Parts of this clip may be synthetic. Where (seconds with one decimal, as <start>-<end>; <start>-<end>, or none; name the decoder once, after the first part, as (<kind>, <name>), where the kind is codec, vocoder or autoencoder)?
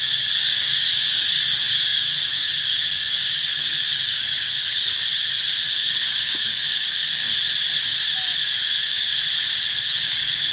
0.0-4.9 (codec, DAC); 5.6-7.2; 8.5-9.1; 9.7-10.5